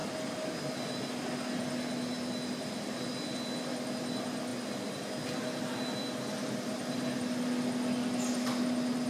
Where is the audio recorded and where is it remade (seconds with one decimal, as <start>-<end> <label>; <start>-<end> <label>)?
0.0-9.1 recorded

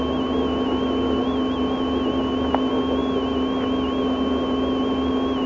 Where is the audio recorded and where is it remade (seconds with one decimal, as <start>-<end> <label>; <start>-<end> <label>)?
0.0-5.5 recorded

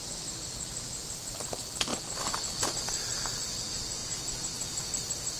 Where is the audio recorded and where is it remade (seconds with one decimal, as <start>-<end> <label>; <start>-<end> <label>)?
0.0-4.0 recorded; 4.0-5.4 remade

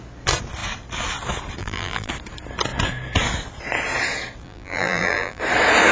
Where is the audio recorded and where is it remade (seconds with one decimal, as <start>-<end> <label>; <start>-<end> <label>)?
0.0-1.6 recorded; 1.6-2.1 remade; 2.1-4.4 recorded; 4.4-5.4 remade; 5.4-5.9 recorded

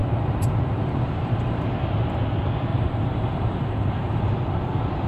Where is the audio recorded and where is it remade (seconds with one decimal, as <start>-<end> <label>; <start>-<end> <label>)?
0.0-1.6 remade; 1.6-2.7 recorded; 2.7-4.2 remade; 4.2-5.1 recorded

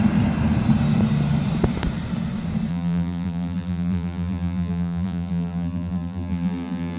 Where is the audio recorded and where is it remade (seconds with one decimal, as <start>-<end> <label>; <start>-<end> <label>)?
0.0-2.7 recorded; 2.7-7.0 remade

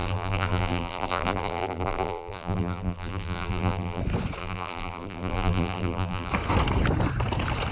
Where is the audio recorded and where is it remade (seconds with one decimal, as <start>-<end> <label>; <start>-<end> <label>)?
0.0-4.0 remade; 4.0-4.4 recorded; 4.4-6.3 remade; 6.3-7.7 recorded

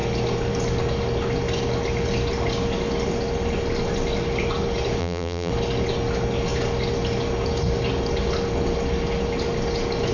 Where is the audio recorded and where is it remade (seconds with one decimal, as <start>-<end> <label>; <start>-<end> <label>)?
0.0-5.0 recorded; 5.0-5.5 remade; 5.5-10.1 recorded